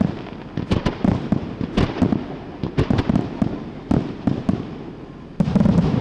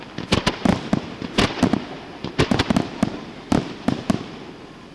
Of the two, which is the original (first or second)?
first